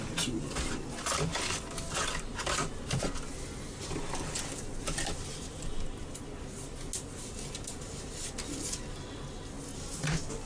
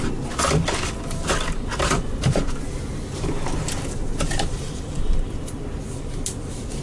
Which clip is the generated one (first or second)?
second